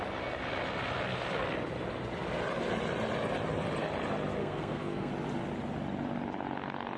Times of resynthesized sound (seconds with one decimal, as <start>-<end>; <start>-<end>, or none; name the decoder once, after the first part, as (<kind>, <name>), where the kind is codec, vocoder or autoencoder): 4.4-5.1 (codec, SNAC)